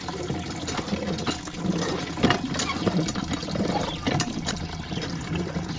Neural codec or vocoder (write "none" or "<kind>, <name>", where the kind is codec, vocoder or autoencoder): none